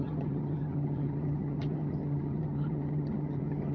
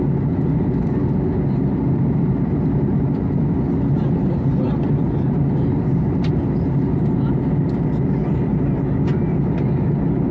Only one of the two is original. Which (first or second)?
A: second